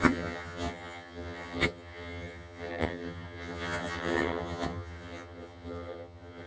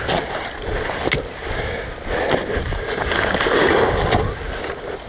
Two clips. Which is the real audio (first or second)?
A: second